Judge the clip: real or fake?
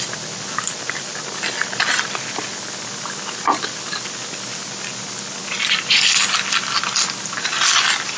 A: real